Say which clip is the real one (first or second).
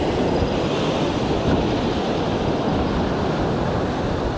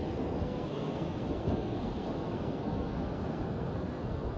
first